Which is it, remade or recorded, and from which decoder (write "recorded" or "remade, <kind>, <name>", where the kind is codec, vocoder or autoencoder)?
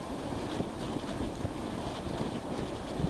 recorded